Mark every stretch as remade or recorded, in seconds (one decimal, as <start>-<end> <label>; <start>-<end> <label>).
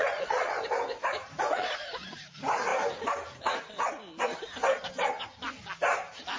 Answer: 0.0-0.6 remade; 0.6-1.5 recorded; 1.5-2.1 remade; 2.1-6.4 recorded